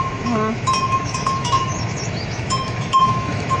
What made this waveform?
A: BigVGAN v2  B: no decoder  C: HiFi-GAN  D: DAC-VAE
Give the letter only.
D